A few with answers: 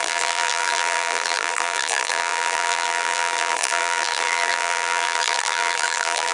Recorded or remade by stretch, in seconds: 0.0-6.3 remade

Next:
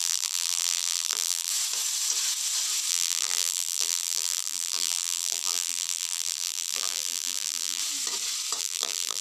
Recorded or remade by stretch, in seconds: 0.0-1.5 remade; 1.5-2.9 recorded; 2.9-7.8 remade; 7.8-8.6 recorded; 8.6-9.2 remade

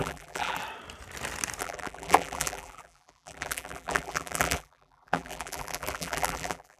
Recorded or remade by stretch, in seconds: 0.0-0.6 remade; 0.6-1.6 recorded; 1.6-6.8 remade